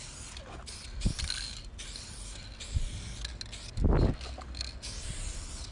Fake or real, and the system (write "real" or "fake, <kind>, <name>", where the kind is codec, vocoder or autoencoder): real